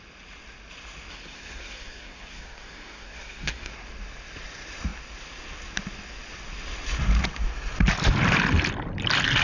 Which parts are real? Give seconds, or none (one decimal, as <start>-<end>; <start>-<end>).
0.0-1.1; 3.7-9.4